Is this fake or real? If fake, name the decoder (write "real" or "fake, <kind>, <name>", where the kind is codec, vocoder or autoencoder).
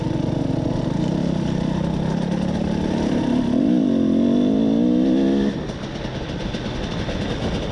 real